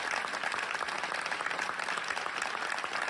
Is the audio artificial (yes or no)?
no